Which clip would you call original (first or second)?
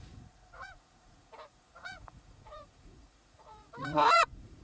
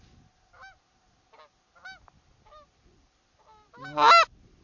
second